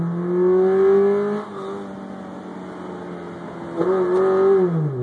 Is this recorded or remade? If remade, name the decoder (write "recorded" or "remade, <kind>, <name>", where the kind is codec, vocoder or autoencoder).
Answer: recorded